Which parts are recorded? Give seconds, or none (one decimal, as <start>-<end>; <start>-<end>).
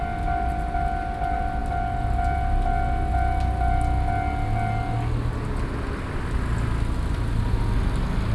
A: 0.0-8.3